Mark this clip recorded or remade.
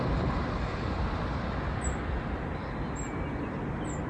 recorded